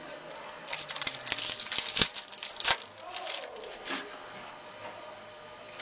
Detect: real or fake real